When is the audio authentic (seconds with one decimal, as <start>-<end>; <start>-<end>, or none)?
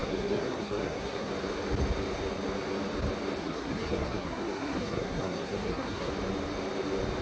1.3-3.4; 6.1-7.2